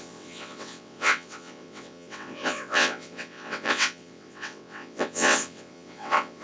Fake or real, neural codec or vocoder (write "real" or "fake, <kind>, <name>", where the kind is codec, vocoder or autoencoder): fake, vocoder, WaveNeXt